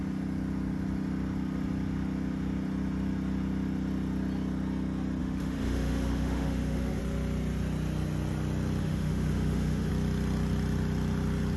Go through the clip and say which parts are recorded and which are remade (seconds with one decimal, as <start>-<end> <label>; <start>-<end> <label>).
0.0-5.2 recorded; 5.2-7.0 remade; 7.0-8.8 recorded; 8.8-9.9 remade; 9.9-11.6 recorded